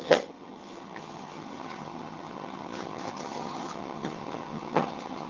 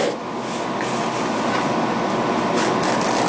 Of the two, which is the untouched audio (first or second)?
second